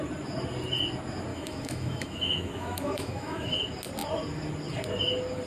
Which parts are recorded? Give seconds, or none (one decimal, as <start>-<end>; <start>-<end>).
0.0-1.3; 3.6-5.5